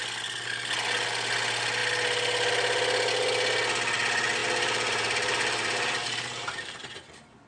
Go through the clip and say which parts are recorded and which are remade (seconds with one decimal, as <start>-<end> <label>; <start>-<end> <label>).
0.0-4.4 recorded; 4.4-6.7 remade; 6.7-7.5 recorded

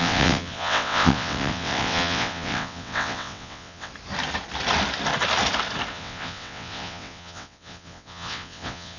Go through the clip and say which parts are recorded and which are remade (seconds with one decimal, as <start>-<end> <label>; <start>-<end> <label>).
0.0-3.9 remade; 3.9-5.9 recorded; 5.9-9.0 remade

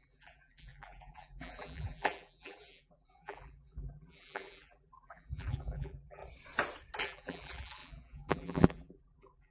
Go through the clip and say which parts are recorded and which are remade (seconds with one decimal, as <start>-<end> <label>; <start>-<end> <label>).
0.0-6.2 remade; 6.2-7.0 recorded; 7.0-9.5 remade

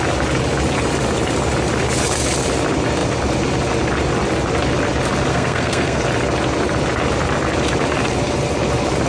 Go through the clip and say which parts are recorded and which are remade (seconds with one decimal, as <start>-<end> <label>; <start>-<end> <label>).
0.0-5.3 recorded; 5.3-6.0 remade; 6.0-9.1 recorded

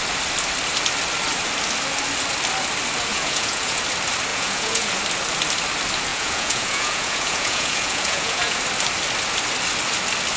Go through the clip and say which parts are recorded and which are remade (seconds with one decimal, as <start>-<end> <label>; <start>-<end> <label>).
0.0-3.1 recorded; 3.1-3.8 remade; 3.8-4.3 recorded; 4.3-4.9 remade; 4.9-6.1 recorded; 6.1-8.6 remade; 8.6-10.4 recorded

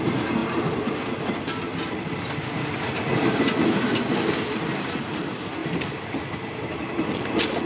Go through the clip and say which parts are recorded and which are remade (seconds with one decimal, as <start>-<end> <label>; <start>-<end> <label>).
0.0-7.7 recorded

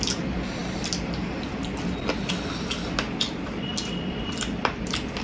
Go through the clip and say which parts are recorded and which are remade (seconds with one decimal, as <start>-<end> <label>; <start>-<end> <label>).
0.0-5.2 recorded